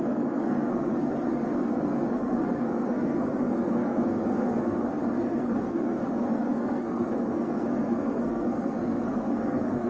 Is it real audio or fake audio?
fake